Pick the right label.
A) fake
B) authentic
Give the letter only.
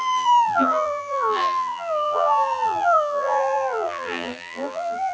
A